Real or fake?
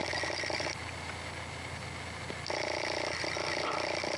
real